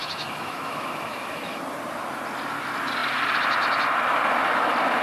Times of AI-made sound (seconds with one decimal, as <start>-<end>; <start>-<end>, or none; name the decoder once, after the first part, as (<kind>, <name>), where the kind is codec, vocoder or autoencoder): 0.0-1.6 (autoencoder, DAC-VAE)